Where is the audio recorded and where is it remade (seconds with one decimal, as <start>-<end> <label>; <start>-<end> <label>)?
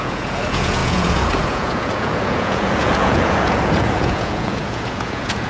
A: 0.0-5.5 remade